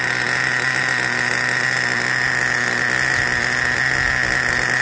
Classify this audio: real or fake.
real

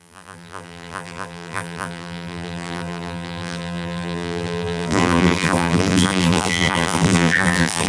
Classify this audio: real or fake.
fake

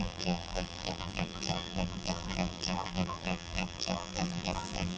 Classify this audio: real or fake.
fake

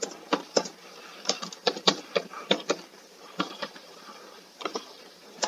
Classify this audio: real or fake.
fake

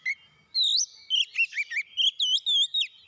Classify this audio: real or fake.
real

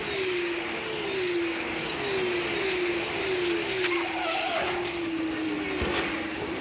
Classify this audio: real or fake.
real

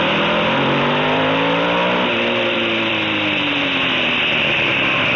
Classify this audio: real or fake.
fake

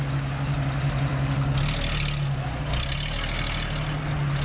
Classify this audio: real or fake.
real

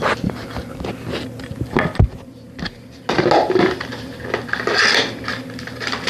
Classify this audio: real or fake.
real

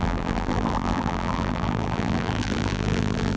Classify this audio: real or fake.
fake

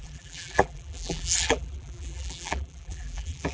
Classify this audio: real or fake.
fake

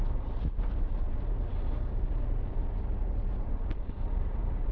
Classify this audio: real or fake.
fake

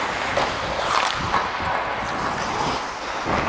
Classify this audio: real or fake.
real